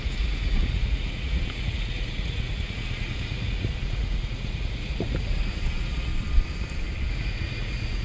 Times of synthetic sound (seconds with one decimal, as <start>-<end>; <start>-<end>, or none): 0.0-6.1; 7.1-8.0